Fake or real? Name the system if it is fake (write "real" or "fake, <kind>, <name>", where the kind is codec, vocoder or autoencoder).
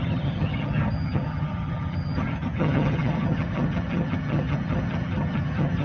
fake, vocoder, HiFi-GAN